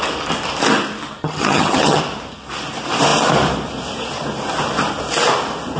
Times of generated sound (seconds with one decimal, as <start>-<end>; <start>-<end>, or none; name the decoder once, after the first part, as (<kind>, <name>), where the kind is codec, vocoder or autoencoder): 1.2-2.0 (vocoder, HiFi-GAN)